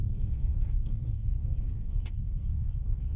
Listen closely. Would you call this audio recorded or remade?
remade